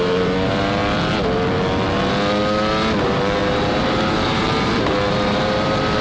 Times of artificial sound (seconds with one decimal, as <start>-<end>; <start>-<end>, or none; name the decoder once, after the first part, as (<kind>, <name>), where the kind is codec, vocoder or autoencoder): 0.0-0.8 (vocoder, BigVGAN v2); 3.0-6.0